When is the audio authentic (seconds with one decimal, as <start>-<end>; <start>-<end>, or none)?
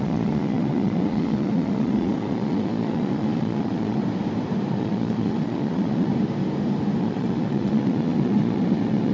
4.0-4.7; 6.1-7.0